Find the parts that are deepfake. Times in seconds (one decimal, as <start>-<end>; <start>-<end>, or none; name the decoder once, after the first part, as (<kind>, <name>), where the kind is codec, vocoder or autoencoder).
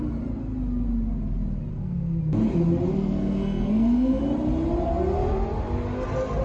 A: 1.7-2.2 (codec, SNAC); 2.9-4.2